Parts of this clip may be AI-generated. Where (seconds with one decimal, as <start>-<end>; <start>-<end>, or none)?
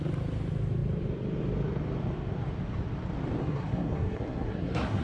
3.4-5.0